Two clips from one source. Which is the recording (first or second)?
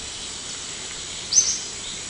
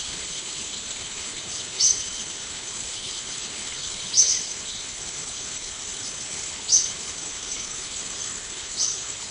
first